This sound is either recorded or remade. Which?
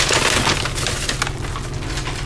recorded